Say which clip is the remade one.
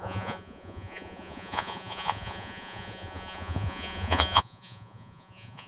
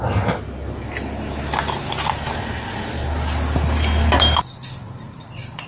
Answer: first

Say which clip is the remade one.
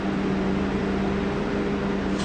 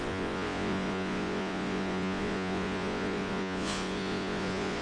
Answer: second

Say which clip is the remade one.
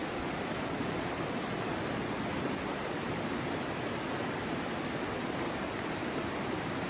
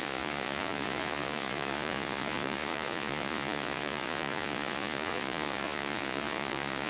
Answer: second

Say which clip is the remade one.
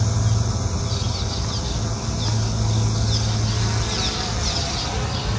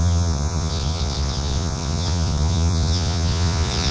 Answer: second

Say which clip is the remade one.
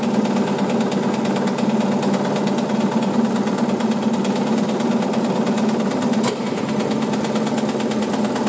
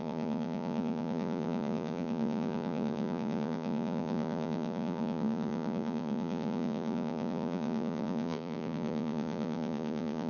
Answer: second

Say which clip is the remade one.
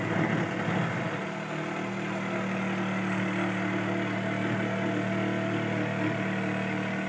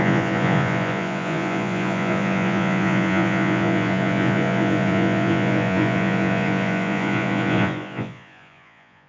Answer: second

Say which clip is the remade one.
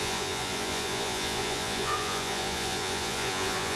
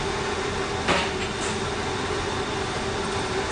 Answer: first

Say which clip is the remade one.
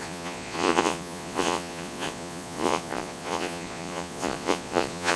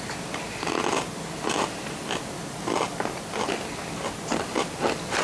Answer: first